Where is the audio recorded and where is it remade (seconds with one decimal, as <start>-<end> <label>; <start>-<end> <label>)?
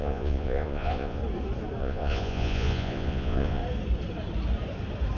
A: 0.0-1.2 remade; 1.2-1.8 recorded; 1.8-3.6 remade; 3.6-5.2 recorded